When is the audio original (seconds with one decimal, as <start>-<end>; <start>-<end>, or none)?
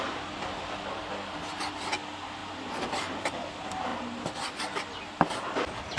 0.0-2.4; 3.3-3.9; 5.0-6.0